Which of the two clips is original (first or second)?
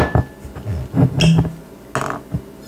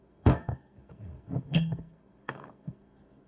first